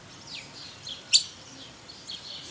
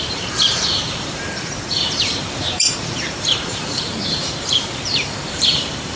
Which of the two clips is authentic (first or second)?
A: first